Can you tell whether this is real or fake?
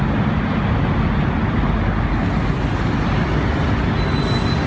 real